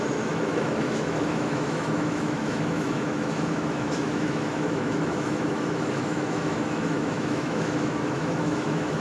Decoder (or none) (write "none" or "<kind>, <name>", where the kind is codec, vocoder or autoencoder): autoencoder, DAC-VAE